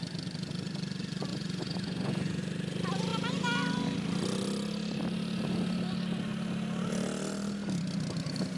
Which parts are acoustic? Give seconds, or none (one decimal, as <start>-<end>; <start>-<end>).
0.0-1.3; 2.4-8.6